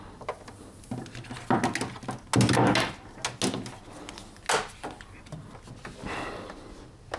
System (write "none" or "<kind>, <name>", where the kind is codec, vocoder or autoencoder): none